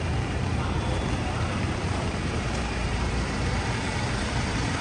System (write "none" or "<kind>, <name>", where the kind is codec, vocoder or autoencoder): vocoder, BigVGAN v2